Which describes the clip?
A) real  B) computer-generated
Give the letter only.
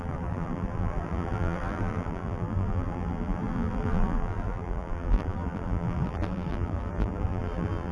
B